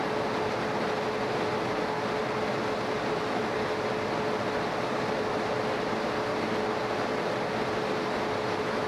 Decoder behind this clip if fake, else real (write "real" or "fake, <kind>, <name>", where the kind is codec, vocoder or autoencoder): real